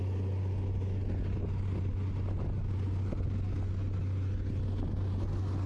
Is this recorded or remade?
recorded